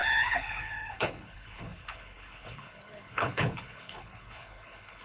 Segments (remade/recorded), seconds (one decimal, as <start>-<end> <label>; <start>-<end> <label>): 0.0-5.0 remade